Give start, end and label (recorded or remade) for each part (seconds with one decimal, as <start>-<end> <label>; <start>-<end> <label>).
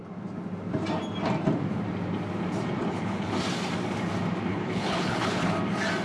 0.0-2.8 recorded; 2.8-3.4 remade; 3.4-4.5 recorded; 4.5-5.5 remade; 5.5-6.0 recorded